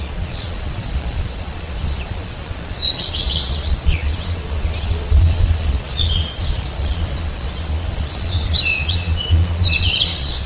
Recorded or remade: remade